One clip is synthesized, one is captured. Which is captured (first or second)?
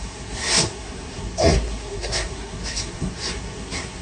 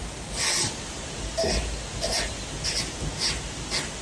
second